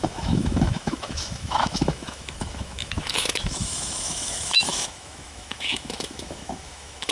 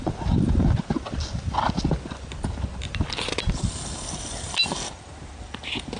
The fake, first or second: first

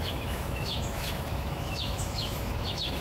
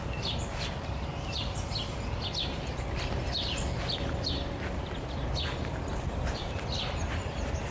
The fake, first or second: first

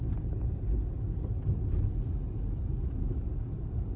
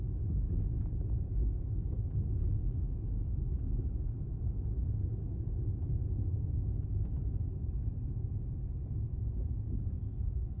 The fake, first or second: second